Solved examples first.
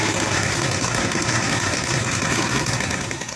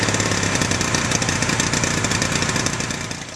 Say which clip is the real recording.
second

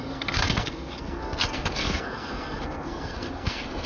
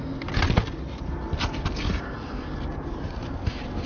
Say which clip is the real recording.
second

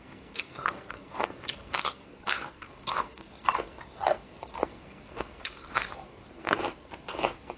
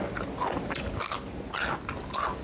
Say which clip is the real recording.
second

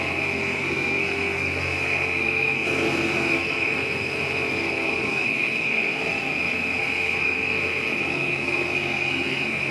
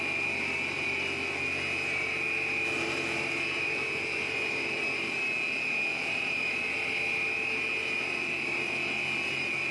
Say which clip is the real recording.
second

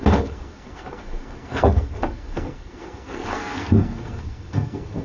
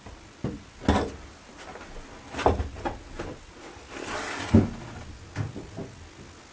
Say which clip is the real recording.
second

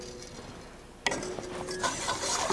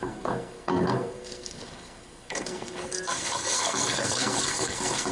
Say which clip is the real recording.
first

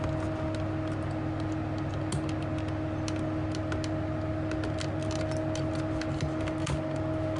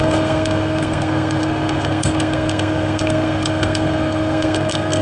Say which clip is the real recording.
first